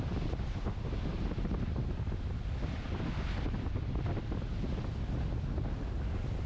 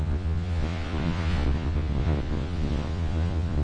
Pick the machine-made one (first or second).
second